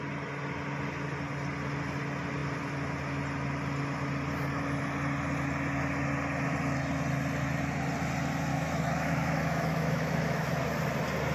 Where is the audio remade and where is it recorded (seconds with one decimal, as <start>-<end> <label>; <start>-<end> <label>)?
0.0-8.5 recorded; 8.5-10.5 remade; 10.5-11.3 recorded